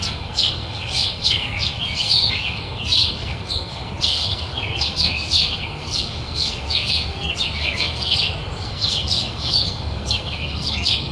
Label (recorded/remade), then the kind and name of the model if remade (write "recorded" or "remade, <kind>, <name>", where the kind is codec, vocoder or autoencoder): remade, codec, SNAC